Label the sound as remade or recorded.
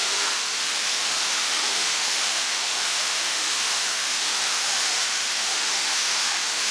remade